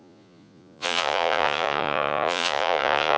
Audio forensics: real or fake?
fake